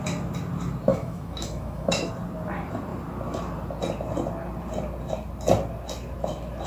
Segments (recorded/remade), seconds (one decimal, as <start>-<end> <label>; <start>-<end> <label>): 0.0-0.9 recorded; 0.9-2.1 remade; 2.1-6.7 recorded